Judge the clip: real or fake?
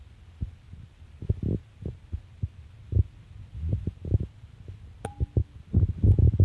real